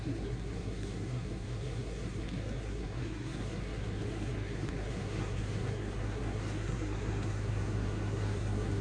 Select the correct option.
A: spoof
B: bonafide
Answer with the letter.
A